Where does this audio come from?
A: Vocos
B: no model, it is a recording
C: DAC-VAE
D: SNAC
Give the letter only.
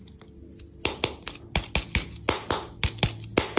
B